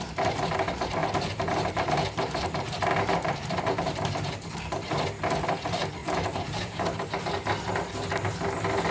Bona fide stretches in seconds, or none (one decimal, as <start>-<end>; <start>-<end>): 0.0-1.0; 4.9-6.0; 7.1-8.9